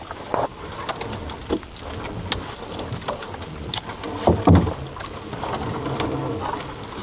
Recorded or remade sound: recorded